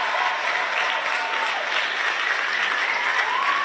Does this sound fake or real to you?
real